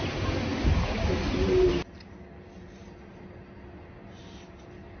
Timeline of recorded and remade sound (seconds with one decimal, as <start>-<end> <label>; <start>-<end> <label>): 0.0-5.0 recorded